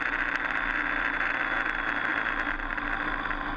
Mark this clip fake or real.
real